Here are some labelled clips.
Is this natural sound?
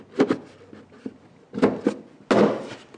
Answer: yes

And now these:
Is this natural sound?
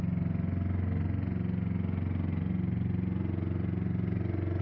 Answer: yes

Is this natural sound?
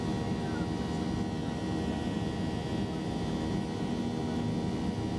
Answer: yes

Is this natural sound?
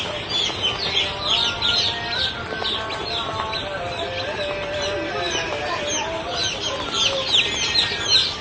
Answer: yes